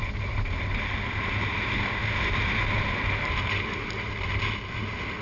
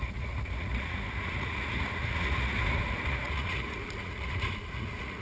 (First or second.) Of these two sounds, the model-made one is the second